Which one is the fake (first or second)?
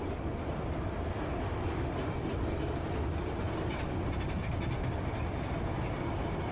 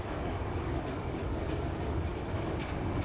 second